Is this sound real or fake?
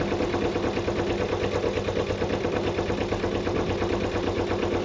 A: real